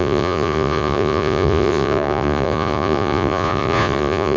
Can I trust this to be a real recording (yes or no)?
no